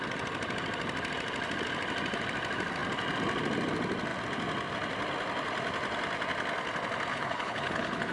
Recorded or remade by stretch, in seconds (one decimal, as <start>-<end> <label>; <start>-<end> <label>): 0.0-7.1 recorded; 7.1-8.1 remade